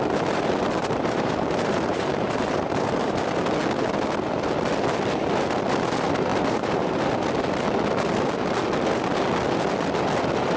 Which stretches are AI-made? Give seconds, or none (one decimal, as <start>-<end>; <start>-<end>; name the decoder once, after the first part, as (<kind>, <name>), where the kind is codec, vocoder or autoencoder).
0.8-3.2 (vocoder, BigVGAN v2); 6.3-7.0